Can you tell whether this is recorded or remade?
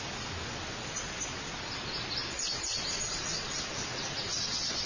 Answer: recorded